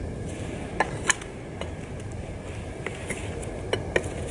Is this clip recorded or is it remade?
recorded